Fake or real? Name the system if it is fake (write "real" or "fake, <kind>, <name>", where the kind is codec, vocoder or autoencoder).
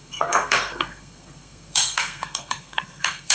fake, codec, SNAC